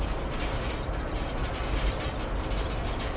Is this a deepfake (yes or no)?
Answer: no